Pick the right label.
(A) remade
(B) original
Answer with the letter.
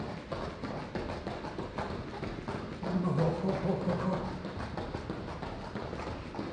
B